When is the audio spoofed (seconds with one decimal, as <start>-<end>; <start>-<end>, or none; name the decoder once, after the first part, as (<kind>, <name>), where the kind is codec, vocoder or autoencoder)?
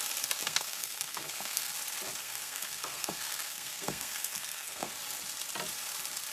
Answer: 0.4-1.7 (codec, SNAC); 2.2-4.9